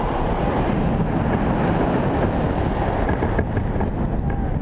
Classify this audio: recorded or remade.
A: recorded